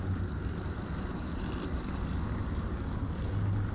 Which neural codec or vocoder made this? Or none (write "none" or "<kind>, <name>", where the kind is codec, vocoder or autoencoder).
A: none